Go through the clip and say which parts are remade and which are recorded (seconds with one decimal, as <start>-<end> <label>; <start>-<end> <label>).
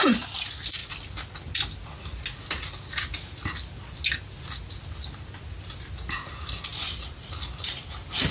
0.0-8.3 recorded